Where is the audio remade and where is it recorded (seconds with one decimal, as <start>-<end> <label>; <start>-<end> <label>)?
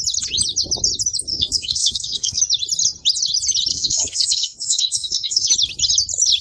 0.0-1.3 recorded; 1.3-2.4 remade; 2.4-3.7 recorded; 3.7-5.5 remade; 5.5-6.4 recorded